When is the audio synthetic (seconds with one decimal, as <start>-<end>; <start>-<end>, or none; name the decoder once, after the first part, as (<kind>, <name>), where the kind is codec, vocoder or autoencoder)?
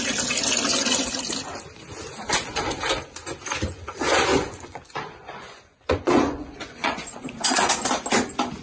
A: 4.3-7.7 (vocoder, Vocos)